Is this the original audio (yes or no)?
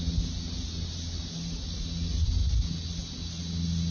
yes